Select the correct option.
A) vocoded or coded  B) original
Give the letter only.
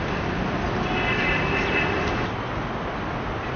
B